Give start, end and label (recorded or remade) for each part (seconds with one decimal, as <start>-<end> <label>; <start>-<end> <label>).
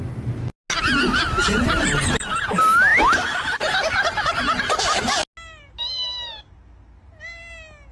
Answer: 0.0-7.9 recorded